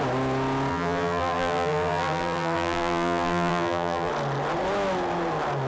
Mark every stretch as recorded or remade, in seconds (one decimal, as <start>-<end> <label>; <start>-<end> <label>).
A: 0.0-0.7 recorded; 0.7-4.1 remade; 4.1-5.7 recorded